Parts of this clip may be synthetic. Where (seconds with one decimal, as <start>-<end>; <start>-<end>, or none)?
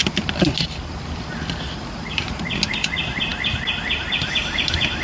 none